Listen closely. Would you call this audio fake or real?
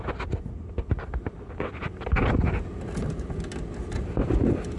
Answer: real